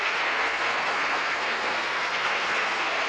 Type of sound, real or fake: fake